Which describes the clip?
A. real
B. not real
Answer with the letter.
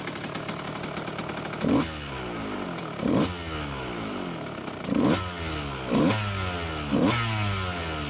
A